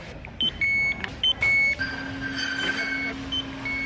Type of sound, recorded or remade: recorded